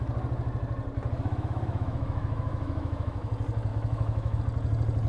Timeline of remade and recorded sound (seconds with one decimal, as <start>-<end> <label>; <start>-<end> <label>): 0.0-1.3 recorded; 1.3-3.3 remade; 3.3-3.7 recorded; 3.7-4.4 remade; 4.4-5.1 recorded